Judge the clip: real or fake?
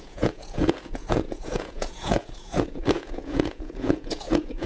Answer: fake